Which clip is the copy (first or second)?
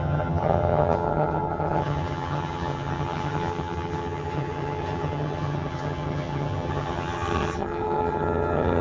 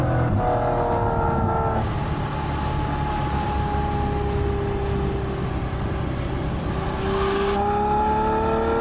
first